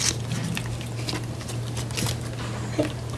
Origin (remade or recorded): recorded